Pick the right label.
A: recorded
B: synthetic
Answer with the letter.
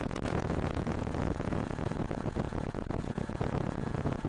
B